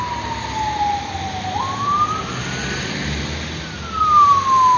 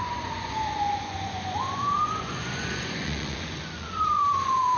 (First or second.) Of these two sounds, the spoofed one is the second